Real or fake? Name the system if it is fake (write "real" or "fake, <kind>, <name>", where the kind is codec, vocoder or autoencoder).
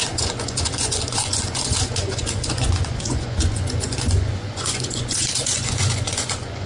fake, vocoder, Vocos